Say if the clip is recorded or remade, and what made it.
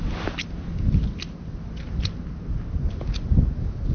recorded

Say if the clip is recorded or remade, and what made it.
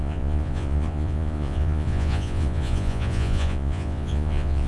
remade, vocoder, Vocos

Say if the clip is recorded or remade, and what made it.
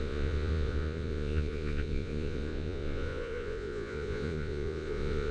remade, vocoder, Vocos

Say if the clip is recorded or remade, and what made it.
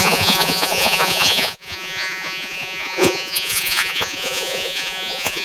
remade, vocoder, Vocos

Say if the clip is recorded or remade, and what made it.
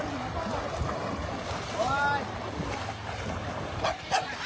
recorded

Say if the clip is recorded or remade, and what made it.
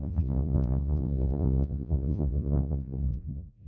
remade, vocoder, Vocos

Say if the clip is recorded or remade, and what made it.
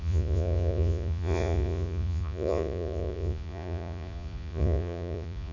remade, vocoder, Vocos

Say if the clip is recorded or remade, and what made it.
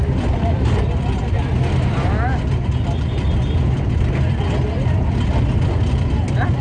recorded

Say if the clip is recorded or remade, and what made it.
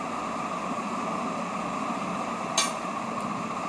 recorded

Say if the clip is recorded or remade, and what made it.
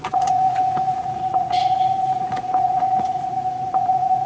remade, vocoder, Vocos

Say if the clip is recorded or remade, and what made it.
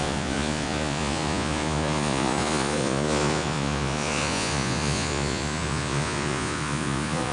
remade, vocoder, Vocos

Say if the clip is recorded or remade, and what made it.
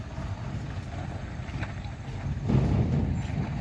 recorded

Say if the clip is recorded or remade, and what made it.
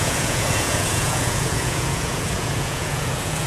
remade, vocoder, Vocos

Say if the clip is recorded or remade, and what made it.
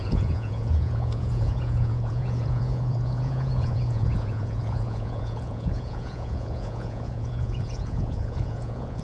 remade, vocoder, Vocos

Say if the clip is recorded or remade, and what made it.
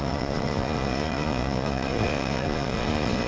remade, vocoder, Vocos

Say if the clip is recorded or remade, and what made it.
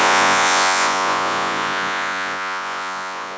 remade, vocoder, Vocos